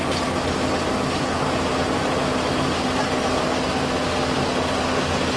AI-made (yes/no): no